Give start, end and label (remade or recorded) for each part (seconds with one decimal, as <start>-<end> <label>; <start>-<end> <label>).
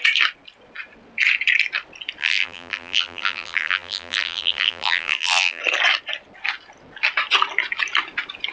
0.0-2.2 recorded; 2.2-5.6 remade; 5.6-8.5 recorded